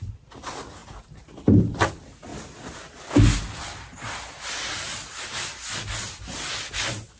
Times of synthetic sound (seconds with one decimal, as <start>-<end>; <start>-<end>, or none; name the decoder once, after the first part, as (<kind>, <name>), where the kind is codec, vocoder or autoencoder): none